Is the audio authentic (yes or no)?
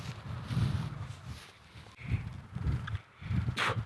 yes